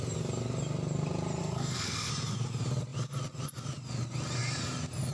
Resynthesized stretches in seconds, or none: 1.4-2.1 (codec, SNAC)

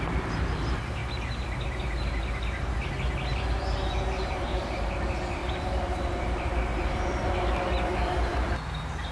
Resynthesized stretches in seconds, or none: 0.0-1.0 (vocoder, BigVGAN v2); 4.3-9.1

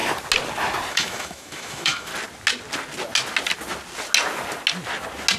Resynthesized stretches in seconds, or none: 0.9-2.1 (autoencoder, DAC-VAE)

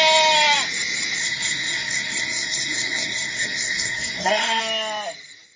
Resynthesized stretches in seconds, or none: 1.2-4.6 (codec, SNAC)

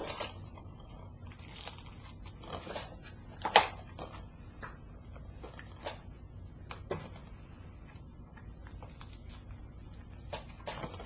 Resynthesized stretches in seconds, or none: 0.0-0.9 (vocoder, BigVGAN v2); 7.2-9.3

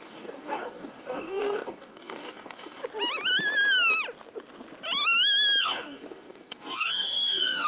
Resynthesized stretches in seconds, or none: 0.0-2.8 (codec, DAC); 5.6-7.7

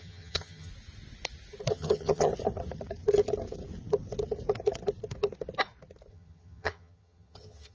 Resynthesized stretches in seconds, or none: 0.0-0.7 (vocoder, HiFi-GAN); 1.7-2.3; 6.1-7.7